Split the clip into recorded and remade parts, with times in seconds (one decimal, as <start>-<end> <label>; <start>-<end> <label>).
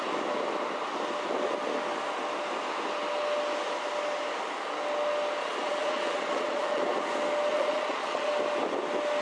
0.0-5.4 recorded; 5.4-6.8 remade; 6.8-7.5 recorded; 7.5-8.3 remade; 8.3-9.2 recorded